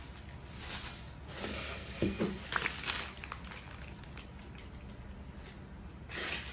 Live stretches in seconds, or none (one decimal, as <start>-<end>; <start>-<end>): 0.0-1.5; 2.2-6.5